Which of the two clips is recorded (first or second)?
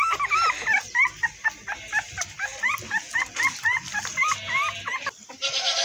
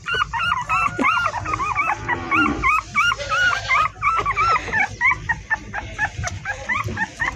first